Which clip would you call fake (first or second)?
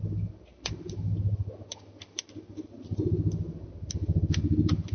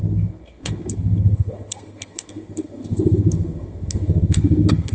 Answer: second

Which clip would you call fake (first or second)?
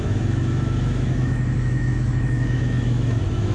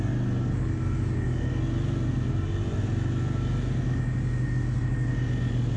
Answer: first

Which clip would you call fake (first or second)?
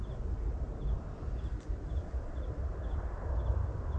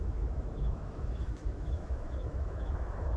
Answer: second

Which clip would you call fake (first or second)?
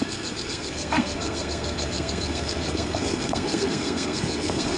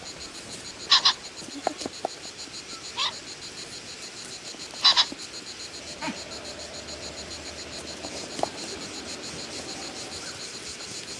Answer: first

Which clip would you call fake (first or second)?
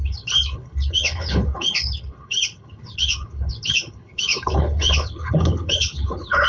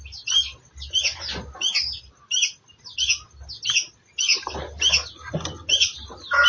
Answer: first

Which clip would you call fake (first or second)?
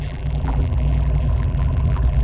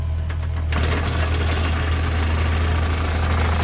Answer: first